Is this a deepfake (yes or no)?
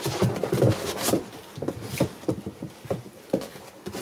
no